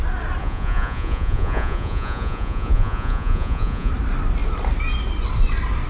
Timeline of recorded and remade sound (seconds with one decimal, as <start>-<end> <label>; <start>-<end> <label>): 0.0-0.4 recorded; 0.4-3.9 remade; 3.9-5.9 recorded